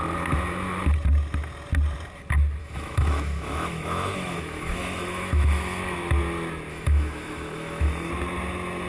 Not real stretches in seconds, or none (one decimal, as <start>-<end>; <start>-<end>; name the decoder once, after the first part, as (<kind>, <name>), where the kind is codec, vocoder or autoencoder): 2.6-5.8 (autoencoder, DAC-VAE); 6.7-8.1